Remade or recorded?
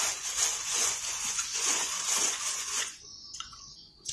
remade